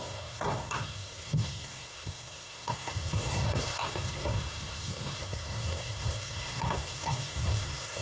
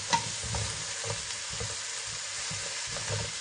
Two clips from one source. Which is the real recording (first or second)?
second